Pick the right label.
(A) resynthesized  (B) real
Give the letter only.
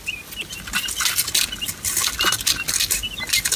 B